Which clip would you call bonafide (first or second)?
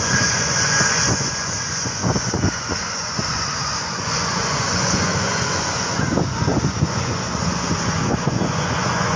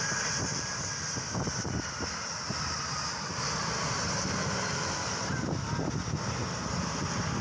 second